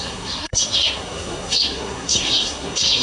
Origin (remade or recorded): remade